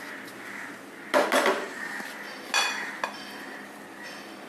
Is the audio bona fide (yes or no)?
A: yes